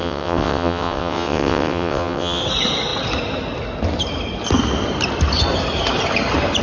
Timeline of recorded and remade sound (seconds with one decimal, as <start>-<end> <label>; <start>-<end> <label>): 0.0-2.4 remade; 2.4-6.6 recorded